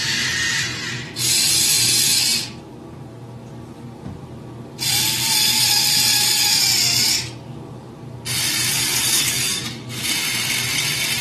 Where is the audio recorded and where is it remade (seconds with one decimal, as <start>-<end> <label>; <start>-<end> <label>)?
0.0-8.7 recorded; 8.7-9.6 remade; 9.6-11.2 recorded